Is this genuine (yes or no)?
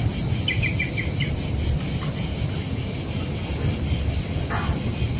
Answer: yes